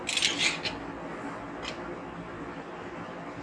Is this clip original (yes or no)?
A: yes